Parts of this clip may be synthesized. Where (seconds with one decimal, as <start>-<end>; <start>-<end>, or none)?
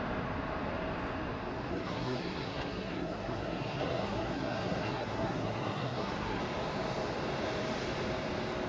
1.7-6.4